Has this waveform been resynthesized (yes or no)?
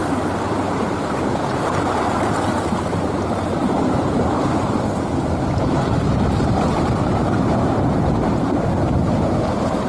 yes